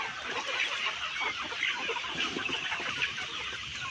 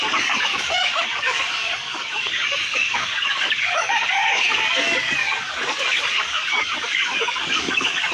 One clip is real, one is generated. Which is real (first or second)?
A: first